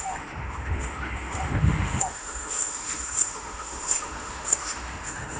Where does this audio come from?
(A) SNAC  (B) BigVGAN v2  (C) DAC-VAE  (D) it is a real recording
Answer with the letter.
C